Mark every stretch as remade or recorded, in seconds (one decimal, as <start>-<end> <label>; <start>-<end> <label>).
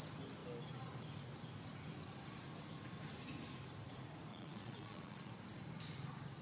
0.0-4.3 recorded; 4.3-5.3 remade; 5.3-6.4 recorded